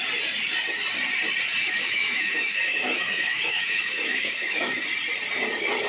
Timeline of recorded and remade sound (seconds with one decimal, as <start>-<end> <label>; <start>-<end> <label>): 0.0-1.6 recorded; 1.6-4.8 remade; 4.8-5.9 recorded